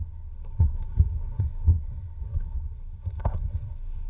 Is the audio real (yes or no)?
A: no